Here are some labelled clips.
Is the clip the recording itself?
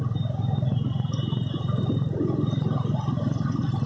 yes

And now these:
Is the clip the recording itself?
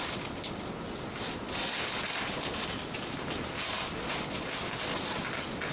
yes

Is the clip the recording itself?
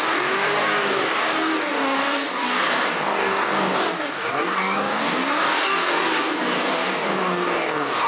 no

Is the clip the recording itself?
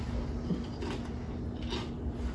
yes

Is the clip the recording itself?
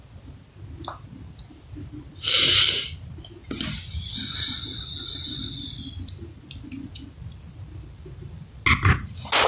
yes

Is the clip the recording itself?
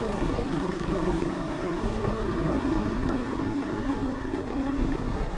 no